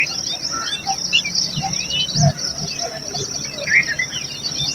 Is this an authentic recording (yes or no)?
yes